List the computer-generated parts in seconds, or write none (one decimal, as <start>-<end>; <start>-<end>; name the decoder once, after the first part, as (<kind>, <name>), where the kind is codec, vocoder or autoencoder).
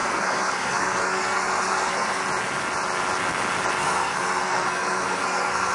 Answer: 0.0-2.2 (codec, SNAC); 3.8-5.7